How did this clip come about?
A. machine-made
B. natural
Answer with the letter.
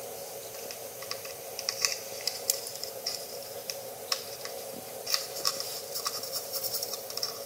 A